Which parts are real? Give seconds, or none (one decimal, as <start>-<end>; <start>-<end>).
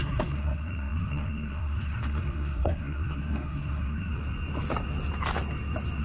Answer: 4.1-6.0